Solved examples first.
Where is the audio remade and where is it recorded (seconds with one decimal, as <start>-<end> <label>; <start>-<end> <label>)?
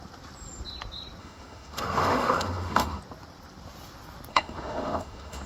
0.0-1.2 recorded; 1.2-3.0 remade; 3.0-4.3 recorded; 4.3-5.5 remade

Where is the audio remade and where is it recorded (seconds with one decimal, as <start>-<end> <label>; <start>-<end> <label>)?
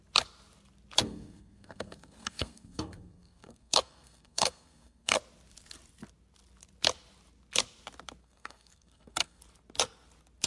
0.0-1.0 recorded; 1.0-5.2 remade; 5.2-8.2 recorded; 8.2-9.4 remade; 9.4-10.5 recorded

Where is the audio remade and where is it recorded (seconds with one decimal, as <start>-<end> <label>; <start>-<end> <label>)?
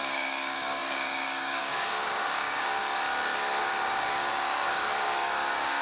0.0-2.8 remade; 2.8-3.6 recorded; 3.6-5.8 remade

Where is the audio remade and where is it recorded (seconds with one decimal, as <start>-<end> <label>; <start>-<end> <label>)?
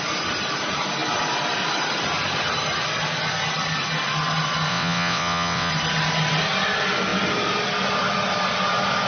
0.0-4.7 recorded; 4.7-5.7 remade; 5.7-9.1 recorded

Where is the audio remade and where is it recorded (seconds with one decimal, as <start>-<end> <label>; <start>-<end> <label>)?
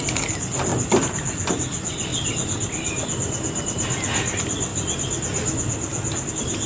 0.0-6.7 recorded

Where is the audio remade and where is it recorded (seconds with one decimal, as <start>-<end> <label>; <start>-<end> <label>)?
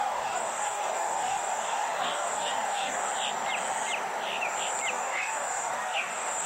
0.0-3.1 remade; 3.1-4.9 recorded; 4.9-6.5 remade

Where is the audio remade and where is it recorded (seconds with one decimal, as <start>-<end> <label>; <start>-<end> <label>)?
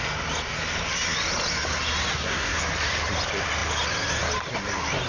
0.0-2.1 recorded; 2.1-2.6 remade; 2.6-5.1 recorded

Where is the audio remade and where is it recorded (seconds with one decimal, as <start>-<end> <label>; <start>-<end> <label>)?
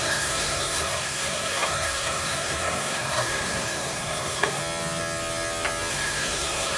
0.0-4.6 remade; 4.6-5.9 recorded; 5.9-6.8 remade